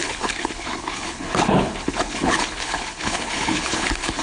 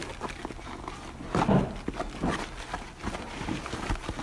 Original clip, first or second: second